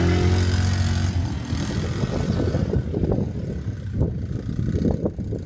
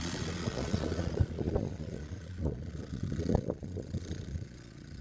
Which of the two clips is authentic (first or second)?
first